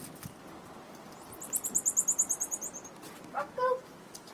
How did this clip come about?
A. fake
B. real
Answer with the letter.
B